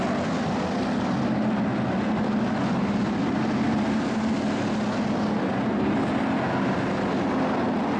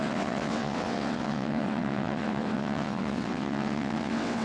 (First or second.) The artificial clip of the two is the second